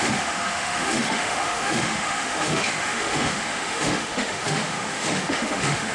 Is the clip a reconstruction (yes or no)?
yes